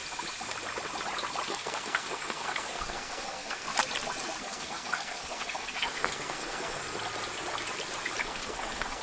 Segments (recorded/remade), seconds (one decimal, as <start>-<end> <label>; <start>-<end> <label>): 0.0-1.5 recorded; 1.5-3.7 remade; 3.7-4.4 recorded; 4.4-6.8 remade; 6.8-8.2 recorded; 8.2-9.0 remade